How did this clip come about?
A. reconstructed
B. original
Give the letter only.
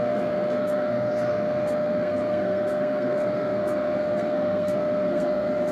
A